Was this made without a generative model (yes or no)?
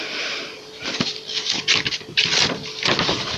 no